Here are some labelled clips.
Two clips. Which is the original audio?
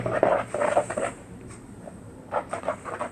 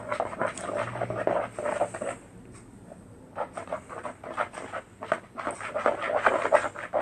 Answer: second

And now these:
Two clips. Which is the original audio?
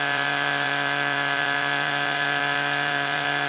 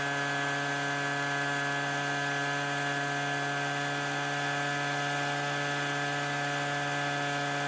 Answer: second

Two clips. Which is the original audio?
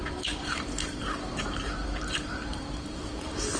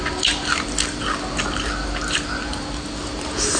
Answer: second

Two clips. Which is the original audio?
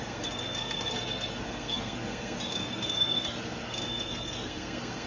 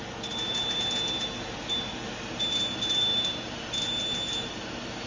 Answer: second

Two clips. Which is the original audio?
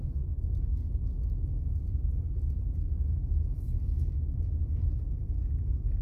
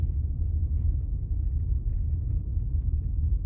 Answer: first